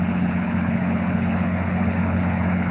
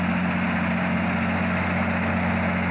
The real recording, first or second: second